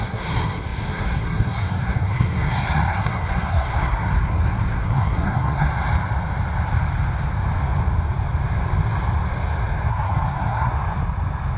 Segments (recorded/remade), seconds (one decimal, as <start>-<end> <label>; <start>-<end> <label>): 0.0-5.7 remade; 5.7-9.9 recorded; 9.9-10.7 remade; 10.7-11.6 recorded